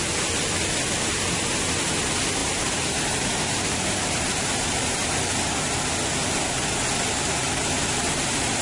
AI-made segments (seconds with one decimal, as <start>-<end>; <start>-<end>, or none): 2.4-5.1